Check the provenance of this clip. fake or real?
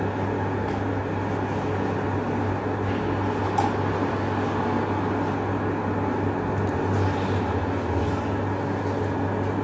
real